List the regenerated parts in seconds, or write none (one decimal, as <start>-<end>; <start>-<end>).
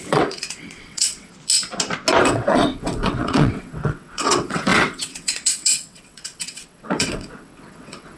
0.0-1.3; 2.2-8.2